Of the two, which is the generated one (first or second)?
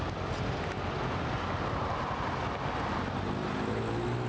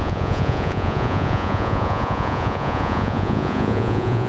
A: second